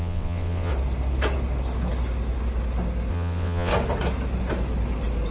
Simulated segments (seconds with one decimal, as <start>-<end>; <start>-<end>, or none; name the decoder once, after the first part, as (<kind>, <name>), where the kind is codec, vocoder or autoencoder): 0.0-0.7 (vocoder, WaveNeXt); 3.1-3.7